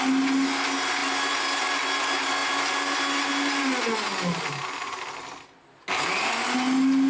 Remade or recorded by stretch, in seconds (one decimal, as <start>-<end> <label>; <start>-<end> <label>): 0.0-7.1 recorded